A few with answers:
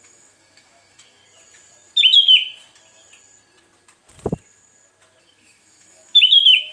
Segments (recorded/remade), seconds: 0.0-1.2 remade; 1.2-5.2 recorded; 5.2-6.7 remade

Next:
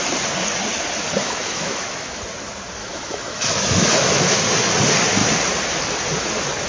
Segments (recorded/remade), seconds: 0.0-1.2 recorded; 1.2-2.2 remade; 2.2-2.8 recorded; 2.8-4.4 remade; 4.4-6.7 recorded